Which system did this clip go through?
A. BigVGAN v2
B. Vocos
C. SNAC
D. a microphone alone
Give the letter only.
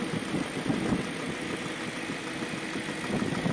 D